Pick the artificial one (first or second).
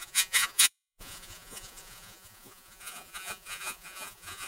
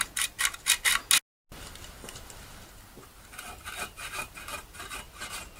first